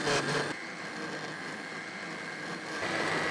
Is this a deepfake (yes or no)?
no